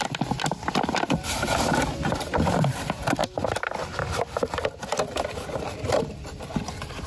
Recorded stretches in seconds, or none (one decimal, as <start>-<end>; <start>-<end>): none